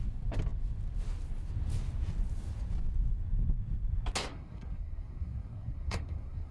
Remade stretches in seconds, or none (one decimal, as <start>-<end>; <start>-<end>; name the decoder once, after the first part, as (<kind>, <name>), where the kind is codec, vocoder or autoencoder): 4.3-6.5 (codec, SNAC)